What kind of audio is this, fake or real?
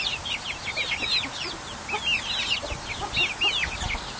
real